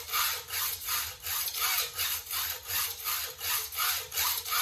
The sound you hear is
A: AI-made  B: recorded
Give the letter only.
B